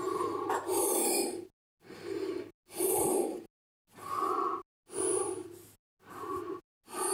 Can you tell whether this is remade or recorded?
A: recorded